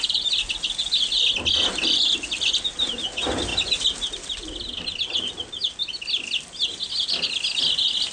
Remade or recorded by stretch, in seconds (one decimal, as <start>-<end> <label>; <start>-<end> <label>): 0.0-8.1 recorded